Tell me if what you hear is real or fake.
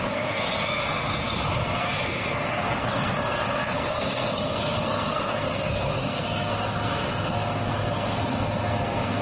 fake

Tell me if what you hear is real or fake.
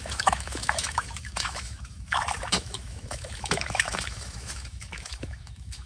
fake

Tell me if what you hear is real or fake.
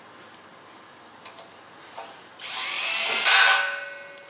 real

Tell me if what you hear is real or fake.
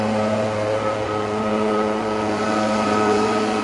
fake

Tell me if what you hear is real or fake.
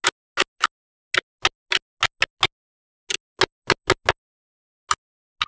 real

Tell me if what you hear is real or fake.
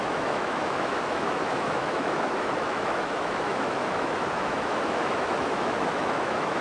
fake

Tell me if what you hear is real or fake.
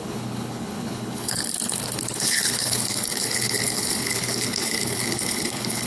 fake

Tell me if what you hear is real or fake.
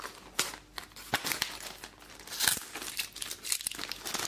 real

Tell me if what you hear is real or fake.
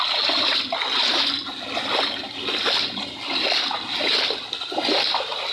real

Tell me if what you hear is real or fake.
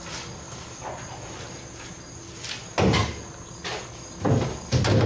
real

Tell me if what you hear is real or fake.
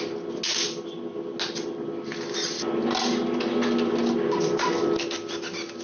real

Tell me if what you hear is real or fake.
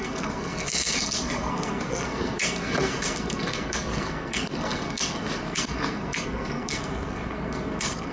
fake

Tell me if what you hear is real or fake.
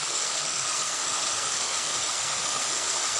fake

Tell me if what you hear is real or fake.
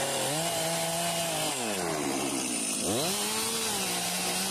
real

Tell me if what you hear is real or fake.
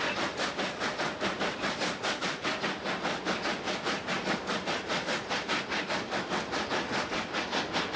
real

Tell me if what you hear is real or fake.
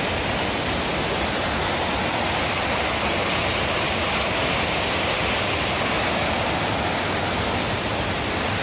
real